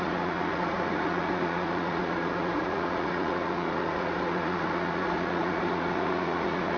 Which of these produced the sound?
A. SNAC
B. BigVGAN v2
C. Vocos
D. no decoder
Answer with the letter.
C